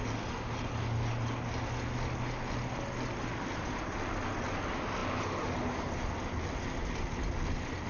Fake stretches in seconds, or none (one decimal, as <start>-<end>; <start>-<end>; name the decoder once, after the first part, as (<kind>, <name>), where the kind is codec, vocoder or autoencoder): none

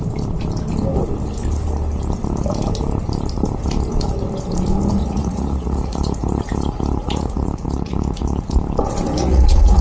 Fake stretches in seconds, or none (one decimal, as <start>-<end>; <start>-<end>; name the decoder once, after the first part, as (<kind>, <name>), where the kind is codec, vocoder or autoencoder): 5.0-8.6 (vocoder, Vocos); 9.2-9.8

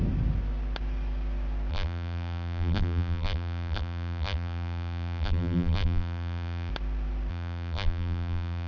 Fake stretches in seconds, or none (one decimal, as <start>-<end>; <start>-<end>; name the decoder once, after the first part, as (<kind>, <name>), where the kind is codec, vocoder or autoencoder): 1.7-6.7 (vocoder, BigVGAN v2); 7.3-8.7

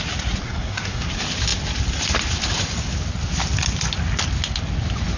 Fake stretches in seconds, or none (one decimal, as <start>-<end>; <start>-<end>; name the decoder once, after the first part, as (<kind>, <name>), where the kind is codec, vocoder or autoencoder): 0.4-1.1 (codec, SNAC)